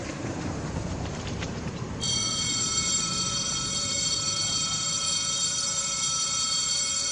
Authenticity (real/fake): fake